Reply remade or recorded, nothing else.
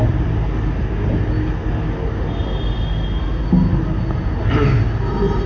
recorded